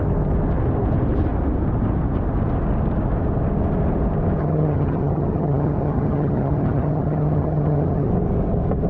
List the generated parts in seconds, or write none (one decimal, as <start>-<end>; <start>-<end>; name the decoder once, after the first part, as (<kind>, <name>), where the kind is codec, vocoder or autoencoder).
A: 4.4-8.1 (vocoder, HiFi-GAN)